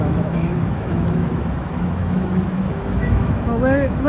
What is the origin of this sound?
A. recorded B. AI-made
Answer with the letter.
B